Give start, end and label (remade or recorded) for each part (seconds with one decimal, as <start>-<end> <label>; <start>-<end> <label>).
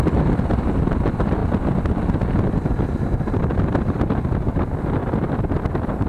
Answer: 0.0-6.1 recorded